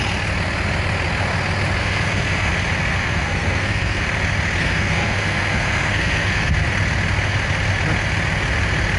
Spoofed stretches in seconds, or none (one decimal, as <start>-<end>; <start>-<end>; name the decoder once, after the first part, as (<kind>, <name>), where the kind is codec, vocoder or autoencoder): 1.8-2.5 (codec, SNAC); 2.9-4.0; 4.6-6.5